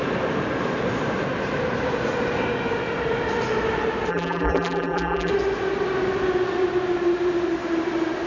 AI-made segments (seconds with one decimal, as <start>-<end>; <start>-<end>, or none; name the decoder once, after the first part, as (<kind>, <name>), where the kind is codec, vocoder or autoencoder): 4.1-5.3 (vocoder, BigVGAN v2)